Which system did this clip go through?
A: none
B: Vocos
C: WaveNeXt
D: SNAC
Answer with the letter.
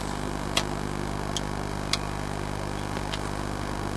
A